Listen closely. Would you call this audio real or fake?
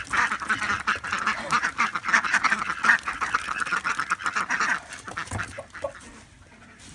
real